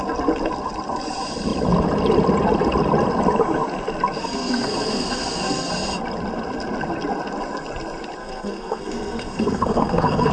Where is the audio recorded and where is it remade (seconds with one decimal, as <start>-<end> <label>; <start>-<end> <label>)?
0.0-4.2 recorded; 4.2-5.7 remade; 5.7-8.2 recorded; 8.2-10.3 remade